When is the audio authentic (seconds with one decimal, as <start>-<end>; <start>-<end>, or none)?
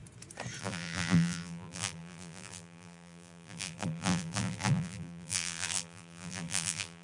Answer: 0.0-0.6